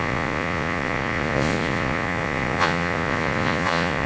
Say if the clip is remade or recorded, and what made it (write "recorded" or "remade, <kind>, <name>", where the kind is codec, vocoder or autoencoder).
remade, vocoder, Vocos